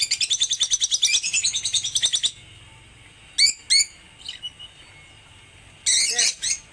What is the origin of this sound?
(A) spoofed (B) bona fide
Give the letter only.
B